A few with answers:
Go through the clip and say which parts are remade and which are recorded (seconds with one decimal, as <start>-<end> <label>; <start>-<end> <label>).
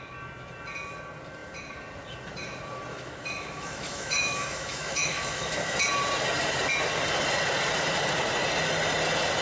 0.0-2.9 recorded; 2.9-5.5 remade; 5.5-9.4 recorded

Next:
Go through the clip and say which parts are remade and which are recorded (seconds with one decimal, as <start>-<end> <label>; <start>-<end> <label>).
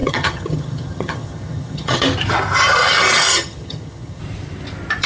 0.0-2.0 remade; 2.0-3.3 recorded; 3.3-4.2 remade; 4.2-5.1 recorded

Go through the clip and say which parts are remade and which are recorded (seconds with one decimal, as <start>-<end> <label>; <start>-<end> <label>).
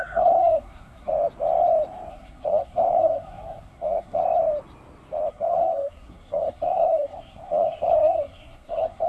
0.0-1.1 remade; 1.1-2.1 recorded; 2.1-4.2 remade; 4.2-5.3 recorded; 5.3-9.1 remade